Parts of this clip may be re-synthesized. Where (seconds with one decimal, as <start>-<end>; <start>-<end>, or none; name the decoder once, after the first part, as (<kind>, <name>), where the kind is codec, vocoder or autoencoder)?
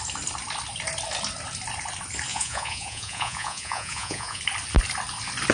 2.3-4.4 (vocoder, Vocos)